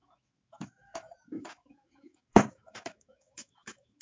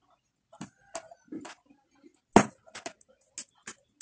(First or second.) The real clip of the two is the second